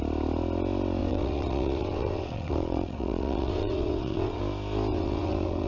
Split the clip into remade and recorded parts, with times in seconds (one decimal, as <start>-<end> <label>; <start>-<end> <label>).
0.0-1.0 recorded; 1.0-4.4 remade; 4.4-4.9 recorded; 4.9-5.7 remade